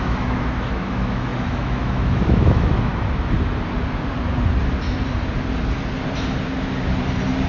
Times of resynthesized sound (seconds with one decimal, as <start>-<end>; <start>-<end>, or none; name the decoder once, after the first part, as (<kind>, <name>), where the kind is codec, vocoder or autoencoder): 0.0-2.9 (autoencoder, DAC-VAE)